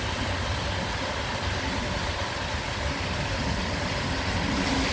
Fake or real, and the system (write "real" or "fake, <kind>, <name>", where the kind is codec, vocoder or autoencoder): real